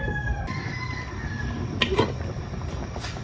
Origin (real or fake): fake